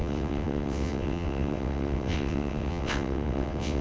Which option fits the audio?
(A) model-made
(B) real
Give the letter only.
A